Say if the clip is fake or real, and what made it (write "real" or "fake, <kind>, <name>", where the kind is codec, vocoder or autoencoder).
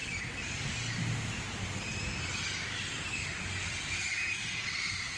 real